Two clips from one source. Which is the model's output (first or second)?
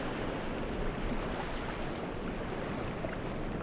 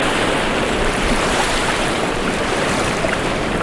second